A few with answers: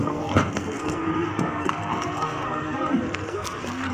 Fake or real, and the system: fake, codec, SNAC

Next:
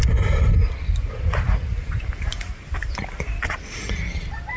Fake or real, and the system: real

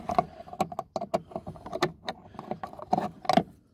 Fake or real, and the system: real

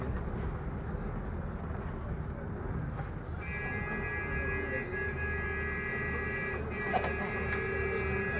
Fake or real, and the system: real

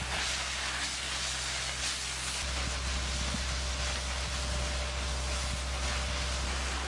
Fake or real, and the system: real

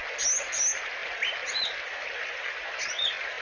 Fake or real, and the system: real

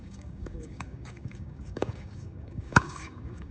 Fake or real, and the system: fake, codec, DAC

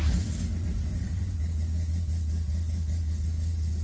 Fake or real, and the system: real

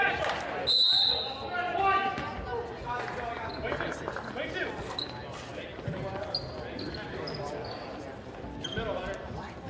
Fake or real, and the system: real